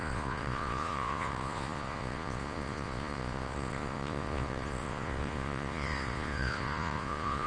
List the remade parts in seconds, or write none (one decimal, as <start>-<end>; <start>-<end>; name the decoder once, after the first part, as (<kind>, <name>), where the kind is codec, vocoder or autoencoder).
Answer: 0.0-7.5 (vocoder, Vocos)